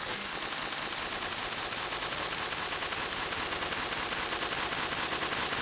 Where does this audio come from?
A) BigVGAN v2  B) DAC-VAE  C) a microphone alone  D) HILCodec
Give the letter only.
C